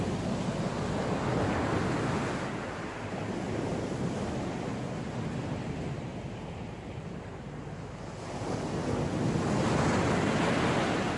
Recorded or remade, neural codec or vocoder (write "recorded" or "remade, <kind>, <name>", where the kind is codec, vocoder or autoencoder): recorded